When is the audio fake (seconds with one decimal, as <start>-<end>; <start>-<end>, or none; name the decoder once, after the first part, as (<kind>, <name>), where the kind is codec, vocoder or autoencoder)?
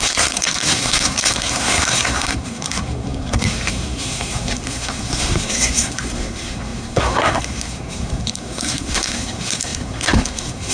0.0-10.7 (codec, SNAC)